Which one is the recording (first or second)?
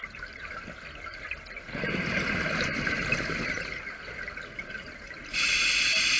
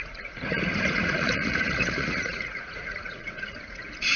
first